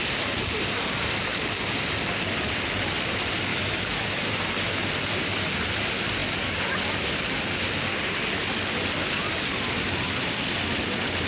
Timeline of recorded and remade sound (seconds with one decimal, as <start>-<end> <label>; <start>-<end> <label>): 0.0-3.5 recorded; 3.5-4.2 remade; 4.2-11.3 recorded